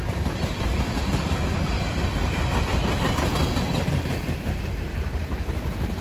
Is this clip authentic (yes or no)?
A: no